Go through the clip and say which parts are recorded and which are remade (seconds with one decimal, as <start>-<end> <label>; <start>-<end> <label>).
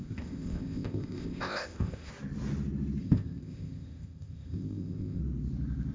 0.0-2.1 remade; 2.1-3.0 recorded; 3.0-5.2 remade; 5.2-5.9 recorded